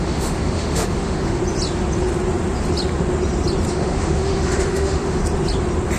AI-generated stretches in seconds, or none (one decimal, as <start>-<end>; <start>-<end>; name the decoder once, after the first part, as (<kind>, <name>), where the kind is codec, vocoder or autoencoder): 0.0-1.4 (autoencoder, DAC-VAE); 3.7-5.2